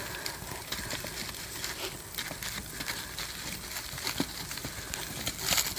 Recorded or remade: recorded